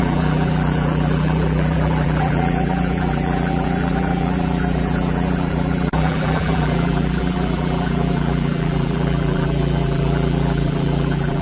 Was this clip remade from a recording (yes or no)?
yes